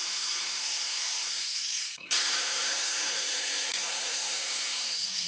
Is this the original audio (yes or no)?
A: no